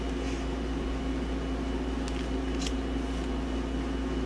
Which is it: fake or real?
real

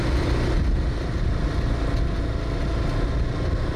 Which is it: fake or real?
real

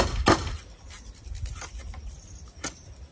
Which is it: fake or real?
real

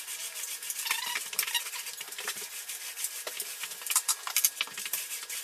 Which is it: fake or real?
real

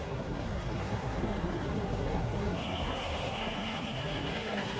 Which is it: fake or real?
fake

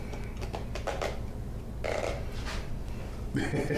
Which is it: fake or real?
real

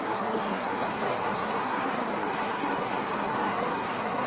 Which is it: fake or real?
fake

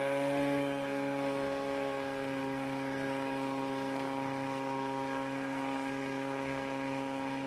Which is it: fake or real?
fake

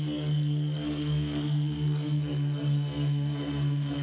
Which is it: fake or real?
fake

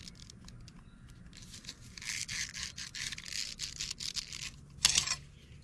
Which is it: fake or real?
real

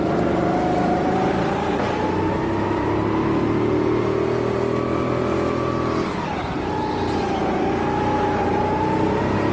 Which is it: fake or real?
real